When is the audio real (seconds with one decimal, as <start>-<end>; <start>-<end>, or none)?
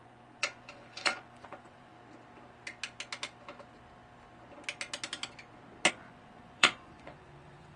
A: 1.9-5.9